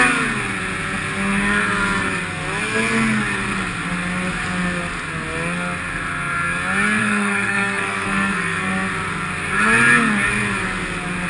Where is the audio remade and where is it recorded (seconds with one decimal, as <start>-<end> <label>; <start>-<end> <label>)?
0.0-7.0 recorded; 7.0-8.7 remade; 8.7-11.3 recorded